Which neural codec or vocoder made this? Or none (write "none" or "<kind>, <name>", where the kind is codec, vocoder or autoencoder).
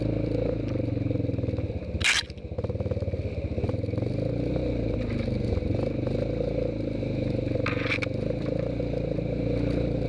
none